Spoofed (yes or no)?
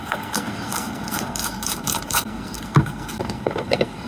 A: yes